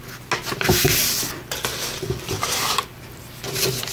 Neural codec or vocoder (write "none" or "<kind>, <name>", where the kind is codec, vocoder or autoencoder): none